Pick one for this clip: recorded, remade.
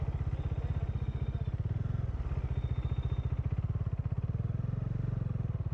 recorded